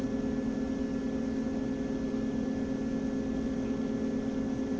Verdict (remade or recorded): recorded